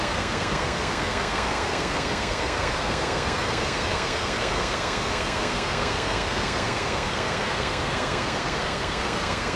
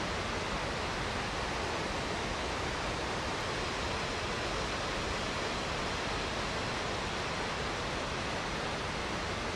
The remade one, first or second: first